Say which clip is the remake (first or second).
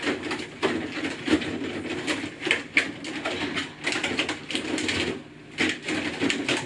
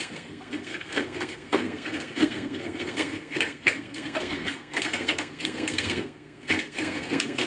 second